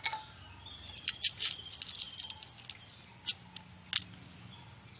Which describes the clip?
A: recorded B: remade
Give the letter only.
A